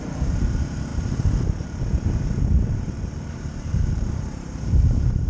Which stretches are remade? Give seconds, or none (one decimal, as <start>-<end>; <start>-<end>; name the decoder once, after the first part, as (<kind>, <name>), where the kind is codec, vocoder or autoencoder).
0.0-5.3 (vocoder, BigVGAN v2)